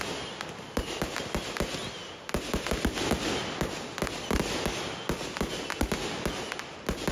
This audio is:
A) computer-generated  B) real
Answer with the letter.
B